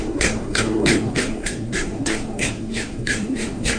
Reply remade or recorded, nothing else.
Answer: remade